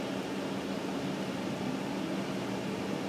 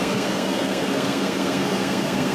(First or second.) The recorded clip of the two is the first